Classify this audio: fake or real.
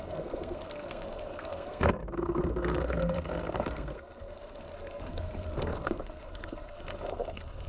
fake